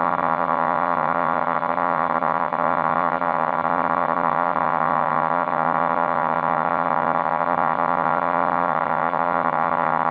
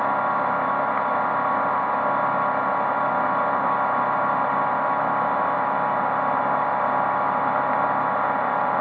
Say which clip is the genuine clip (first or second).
second